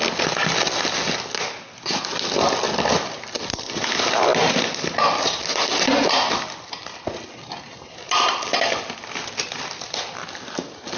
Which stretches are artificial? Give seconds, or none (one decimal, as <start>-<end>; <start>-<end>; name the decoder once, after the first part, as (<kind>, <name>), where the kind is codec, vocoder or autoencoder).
none